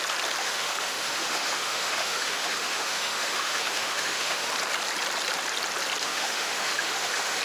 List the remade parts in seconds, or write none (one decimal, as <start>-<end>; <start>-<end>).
0.4-4.5; 6.0-7.4